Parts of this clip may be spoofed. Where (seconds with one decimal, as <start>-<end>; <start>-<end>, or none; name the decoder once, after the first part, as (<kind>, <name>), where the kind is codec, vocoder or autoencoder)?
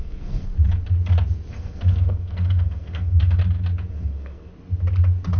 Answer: 0.0-0.5 (codec, SNAC); 1.5-3.4; 3.9-4.5